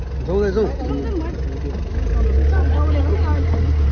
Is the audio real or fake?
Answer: real